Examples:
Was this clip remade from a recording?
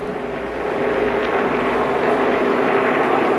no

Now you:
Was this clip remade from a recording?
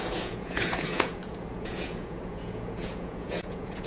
yes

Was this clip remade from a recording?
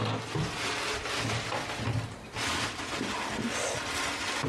no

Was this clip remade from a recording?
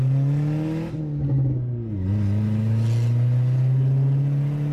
no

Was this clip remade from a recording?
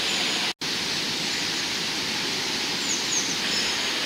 no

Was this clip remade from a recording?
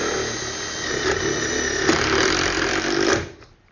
no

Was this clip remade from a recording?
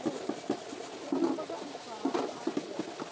no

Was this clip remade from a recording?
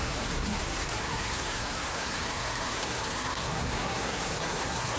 yes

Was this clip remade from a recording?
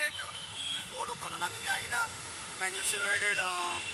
yes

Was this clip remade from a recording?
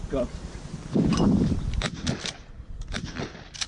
yes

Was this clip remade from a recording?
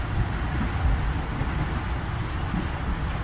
no